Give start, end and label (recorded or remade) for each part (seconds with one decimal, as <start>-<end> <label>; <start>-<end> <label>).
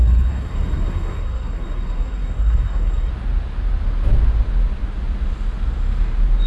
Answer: 0.0-3.1 remade; 3.1-6.5 recorded